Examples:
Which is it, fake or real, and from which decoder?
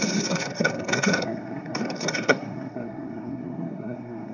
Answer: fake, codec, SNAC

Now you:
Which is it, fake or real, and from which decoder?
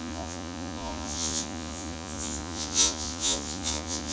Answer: fake, vocoder, Vocos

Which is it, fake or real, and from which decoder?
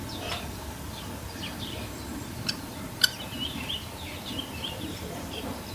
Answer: fake, vocoder, BigVGAN v2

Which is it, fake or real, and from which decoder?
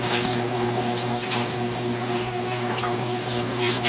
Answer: fake, codec, DAC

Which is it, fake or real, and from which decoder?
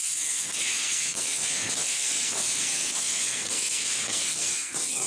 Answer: fake, codec, SNAC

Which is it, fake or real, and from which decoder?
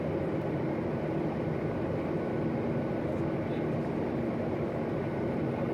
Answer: real